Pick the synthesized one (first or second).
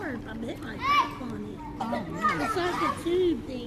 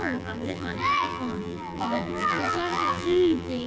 second